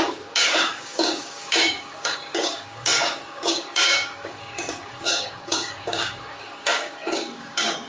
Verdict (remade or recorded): remade